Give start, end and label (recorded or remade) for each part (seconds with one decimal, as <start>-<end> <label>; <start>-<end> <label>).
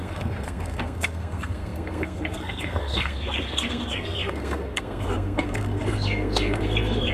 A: 0.0-7.1 remade